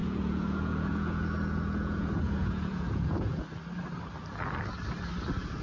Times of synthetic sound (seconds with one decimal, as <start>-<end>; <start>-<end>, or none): 0.0-3.4